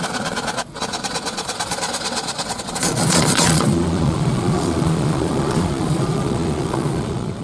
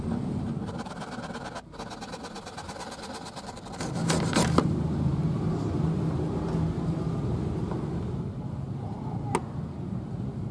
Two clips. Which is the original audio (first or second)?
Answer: second